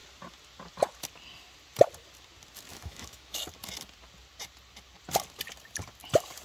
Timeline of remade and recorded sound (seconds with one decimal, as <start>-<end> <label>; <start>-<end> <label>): 0.0-2.7 recorded; 2.7-3.4 remade; 3.4-6.4 recorded